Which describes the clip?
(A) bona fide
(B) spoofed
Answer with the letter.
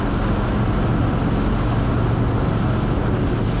A